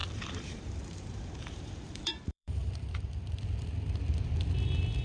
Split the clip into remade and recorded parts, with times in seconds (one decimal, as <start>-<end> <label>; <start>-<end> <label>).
0.0-2.7 remade; 2.7-5.0 recorded